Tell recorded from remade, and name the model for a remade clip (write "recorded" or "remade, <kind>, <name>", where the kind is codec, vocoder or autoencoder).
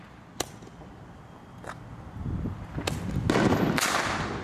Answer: recorded